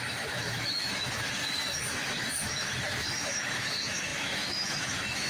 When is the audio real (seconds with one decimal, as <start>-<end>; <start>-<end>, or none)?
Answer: none